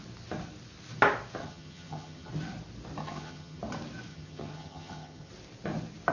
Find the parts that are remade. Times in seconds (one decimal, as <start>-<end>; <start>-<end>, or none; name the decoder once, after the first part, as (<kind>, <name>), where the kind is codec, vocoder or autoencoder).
1.4-2.3 (vocoder, HiFi-GAN); 3.0-3.6; 4.1-5.3